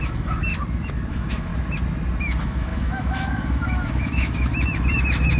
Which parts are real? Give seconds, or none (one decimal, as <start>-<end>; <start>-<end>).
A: 0.5-1.1; 1.5-2.2